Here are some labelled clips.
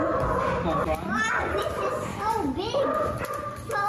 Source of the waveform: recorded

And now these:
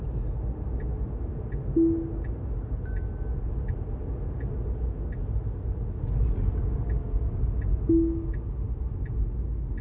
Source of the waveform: recorded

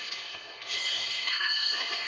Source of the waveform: remade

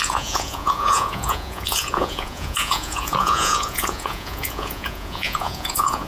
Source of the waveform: remade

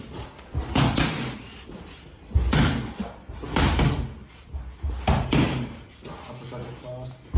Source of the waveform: recorded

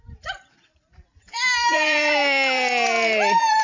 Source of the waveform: remade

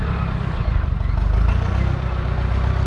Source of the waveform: recorded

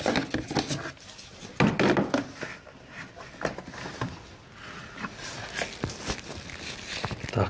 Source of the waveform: recorded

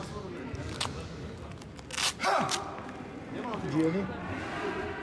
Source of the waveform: recorded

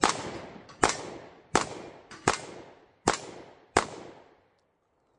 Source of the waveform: recorded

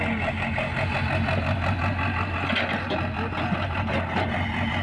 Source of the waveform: recorded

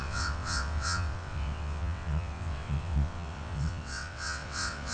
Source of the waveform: remade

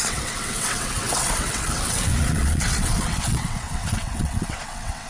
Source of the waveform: remade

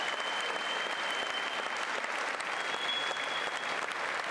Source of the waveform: recorded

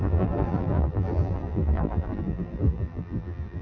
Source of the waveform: remade